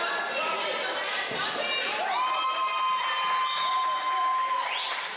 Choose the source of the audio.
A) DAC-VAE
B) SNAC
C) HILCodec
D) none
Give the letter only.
D